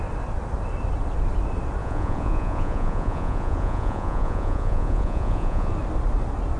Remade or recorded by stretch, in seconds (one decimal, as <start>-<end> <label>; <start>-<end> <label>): 0.0-1.8 recorded; 1.8-5.7 remade; 5.7-6.6 recorded